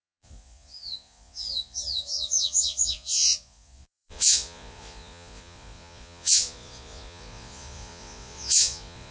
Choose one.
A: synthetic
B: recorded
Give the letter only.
A